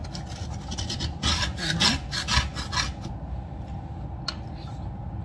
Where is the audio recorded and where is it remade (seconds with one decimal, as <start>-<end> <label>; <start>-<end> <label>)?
0.0-5.2 recorded